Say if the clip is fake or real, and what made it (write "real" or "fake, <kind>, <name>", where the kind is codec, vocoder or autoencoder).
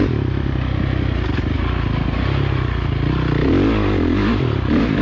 real